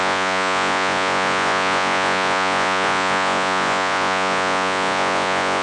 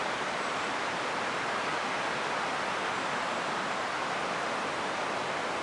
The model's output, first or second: first